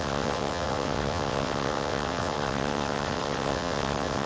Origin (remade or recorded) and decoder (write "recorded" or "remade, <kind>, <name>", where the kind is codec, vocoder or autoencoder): remade, vocoder, WaveNeXt